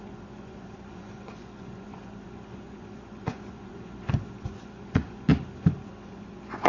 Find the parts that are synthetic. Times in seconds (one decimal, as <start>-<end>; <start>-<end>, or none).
0.0-5.3; 5.8-6.7